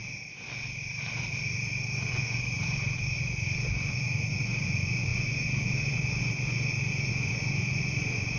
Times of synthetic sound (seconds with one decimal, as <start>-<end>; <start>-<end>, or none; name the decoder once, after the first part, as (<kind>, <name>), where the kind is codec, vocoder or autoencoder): 2.0-8.4 (vocoder, Vocos)